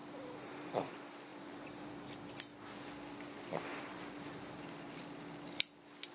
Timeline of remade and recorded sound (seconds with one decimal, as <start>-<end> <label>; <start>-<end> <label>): 0.0-0.9 remade; 0.9-1.3 recorded; 1.3-1.9 remade; 1.9-3.7 recorded; 3.7-4.9 remade; 4.9-6.1 recorded